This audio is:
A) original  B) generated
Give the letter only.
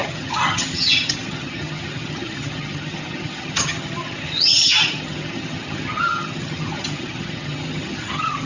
B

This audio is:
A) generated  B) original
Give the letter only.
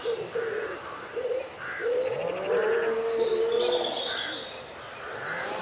B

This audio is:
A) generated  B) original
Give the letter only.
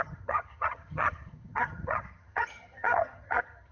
A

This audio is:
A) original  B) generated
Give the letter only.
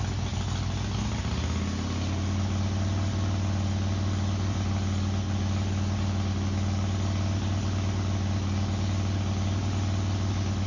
A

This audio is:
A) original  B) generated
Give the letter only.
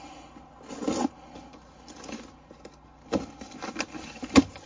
A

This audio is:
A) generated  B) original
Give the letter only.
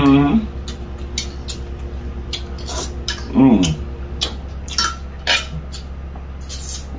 B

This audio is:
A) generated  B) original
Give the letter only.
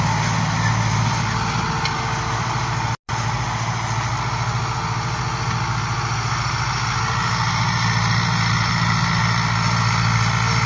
B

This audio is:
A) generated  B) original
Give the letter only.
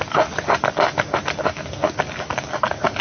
B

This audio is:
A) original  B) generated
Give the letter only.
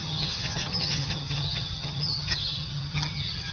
B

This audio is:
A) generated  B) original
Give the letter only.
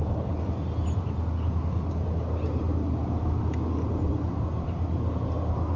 B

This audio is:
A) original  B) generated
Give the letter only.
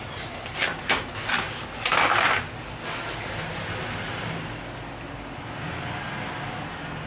A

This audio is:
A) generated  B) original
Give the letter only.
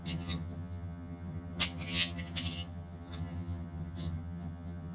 A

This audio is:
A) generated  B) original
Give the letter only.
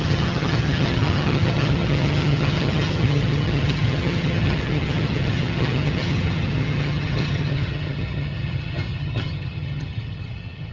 A